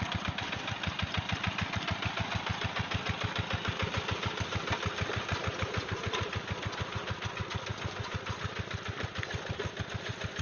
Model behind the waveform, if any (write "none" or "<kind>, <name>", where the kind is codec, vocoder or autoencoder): none